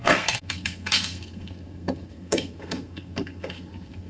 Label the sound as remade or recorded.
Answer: remade